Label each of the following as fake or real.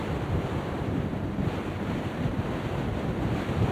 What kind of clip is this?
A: real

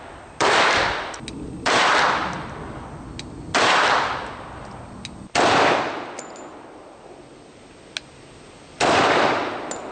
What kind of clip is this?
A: real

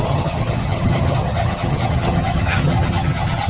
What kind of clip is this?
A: fake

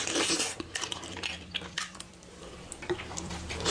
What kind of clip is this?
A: fake